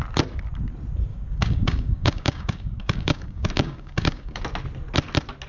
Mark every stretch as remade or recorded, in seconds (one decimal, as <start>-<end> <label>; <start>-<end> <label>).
0.0-1.1 recorded; 1.1-4.4 remade; 4.4-5.5 recorded